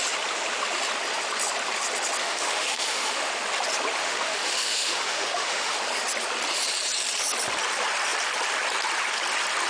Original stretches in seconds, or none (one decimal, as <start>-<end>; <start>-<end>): 0.0-2.2; 3.3-4.0; 5.8-9.7